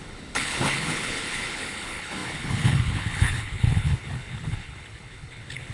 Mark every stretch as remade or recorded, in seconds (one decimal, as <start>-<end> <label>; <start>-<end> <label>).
0.0-5.7 remade